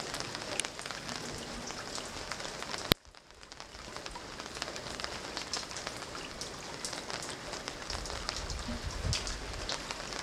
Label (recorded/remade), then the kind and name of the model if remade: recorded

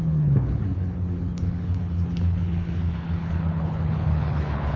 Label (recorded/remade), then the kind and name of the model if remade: remade, codec, HILCodec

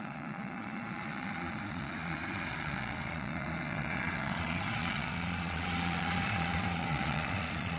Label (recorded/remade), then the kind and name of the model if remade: remade, vocoder, Vocos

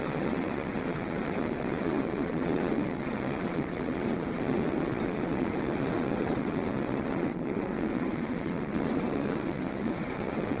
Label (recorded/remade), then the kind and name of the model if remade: remade, vocoder, WaveNeXt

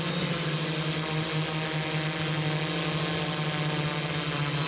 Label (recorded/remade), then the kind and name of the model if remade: recorded